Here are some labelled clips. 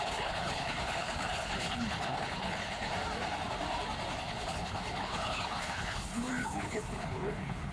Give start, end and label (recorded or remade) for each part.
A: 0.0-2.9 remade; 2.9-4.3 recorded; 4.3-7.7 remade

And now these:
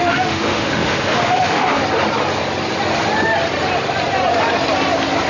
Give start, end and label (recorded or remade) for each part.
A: 0.0-1.8 remade; 1.8-5.3 recorded

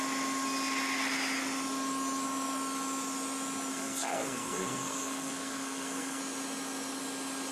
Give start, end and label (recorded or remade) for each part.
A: 0.0-3.7 recorded; 3.7-6.2 remade; 6.2-7.5 recorded

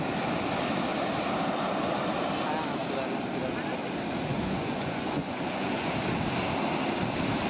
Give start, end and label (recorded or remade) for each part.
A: 0.0-4.3 recorded; 4.3-5.9 remade; 5.9-7.5 recorded

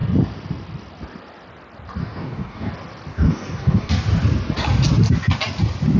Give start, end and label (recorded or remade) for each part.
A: 0.0-2.0 recorded; 2.0-2.7 remade; 2.7-3.1 recorded; 3.1-3.9 remade; 3.9-6.0 recorded

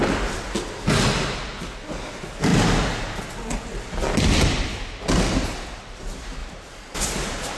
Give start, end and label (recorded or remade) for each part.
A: 0.0-7.6 recorded